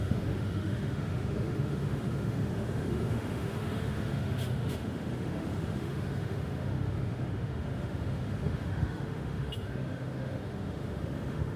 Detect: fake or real fake